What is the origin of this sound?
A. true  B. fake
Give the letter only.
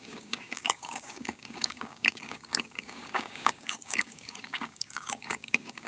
B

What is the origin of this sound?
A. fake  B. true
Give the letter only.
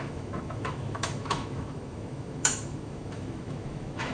A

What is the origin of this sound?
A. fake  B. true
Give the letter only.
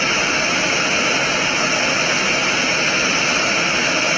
B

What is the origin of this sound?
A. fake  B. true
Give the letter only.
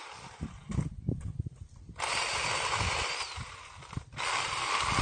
B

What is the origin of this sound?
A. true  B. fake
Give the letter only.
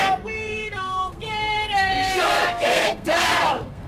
B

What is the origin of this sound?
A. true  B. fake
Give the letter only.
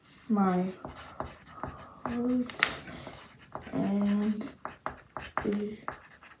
A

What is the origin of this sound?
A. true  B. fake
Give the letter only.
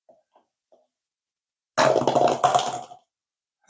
A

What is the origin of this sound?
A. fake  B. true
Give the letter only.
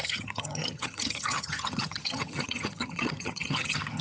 A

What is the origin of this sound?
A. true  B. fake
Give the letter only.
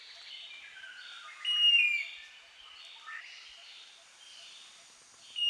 A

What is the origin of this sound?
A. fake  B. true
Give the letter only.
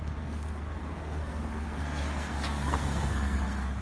A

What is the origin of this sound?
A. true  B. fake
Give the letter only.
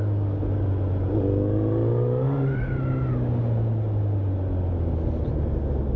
A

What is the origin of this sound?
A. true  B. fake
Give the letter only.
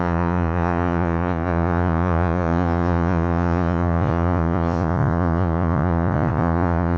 B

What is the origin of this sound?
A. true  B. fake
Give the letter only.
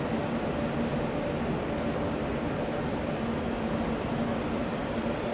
A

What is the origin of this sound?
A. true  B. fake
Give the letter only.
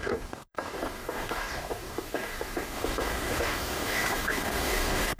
B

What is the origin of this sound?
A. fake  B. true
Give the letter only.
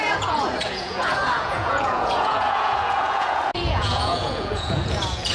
A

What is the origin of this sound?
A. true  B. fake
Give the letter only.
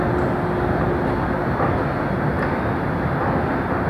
A